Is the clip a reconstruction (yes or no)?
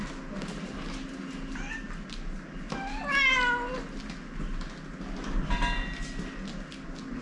no